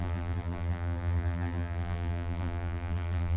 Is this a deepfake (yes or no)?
yes